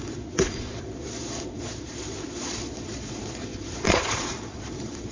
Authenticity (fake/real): fake